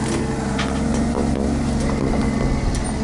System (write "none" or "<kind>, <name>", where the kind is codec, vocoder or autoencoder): none